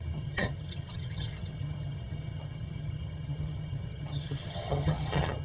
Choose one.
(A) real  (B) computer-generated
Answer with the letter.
B